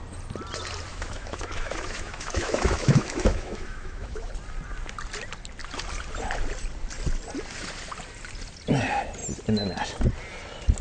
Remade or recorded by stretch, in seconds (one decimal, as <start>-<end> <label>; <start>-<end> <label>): 0.0-0.9 recorded; 0.9-4.3 remade; 4.3-10.8 recorded